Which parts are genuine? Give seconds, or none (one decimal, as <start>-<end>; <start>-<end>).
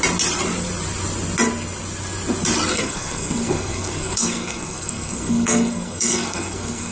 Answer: 0.0-2.7